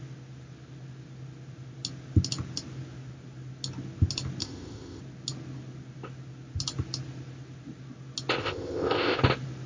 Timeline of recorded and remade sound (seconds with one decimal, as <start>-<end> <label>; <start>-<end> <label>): 0.0-4.4 recorded; 4.4-5.0 remade; 5.0-8.4 recorded; 8.4-9.2 remade; 9.2-9.7 recorded